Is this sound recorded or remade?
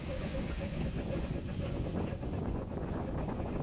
remade